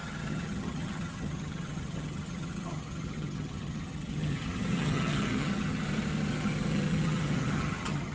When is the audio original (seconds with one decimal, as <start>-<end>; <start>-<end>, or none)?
5.8-6.3